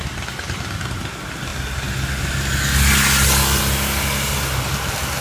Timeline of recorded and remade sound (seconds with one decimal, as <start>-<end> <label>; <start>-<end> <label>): 0.0-5.2 recorded